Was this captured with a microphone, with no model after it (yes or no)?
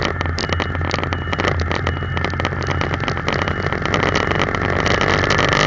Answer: yes